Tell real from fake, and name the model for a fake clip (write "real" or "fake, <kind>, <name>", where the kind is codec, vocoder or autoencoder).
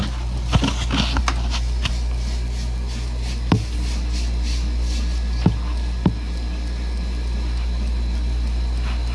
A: real